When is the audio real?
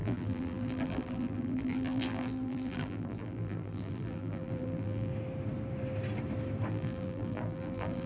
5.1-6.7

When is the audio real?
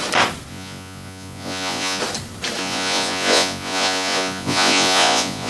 0.0-0.5; 2.0-2.6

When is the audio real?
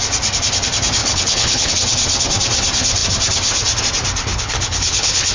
0.0-1.0; 1.7-4.3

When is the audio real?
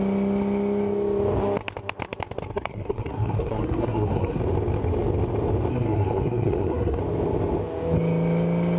0.0-2.5; 4.4-5.7; 7.0-8.8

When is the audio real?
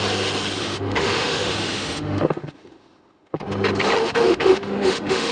0.0-0.6; 3.4-4.0